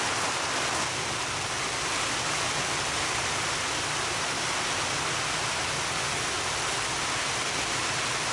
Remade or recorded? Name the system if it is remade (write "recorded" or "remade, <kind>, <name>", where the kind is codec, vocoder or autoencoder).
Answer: recorded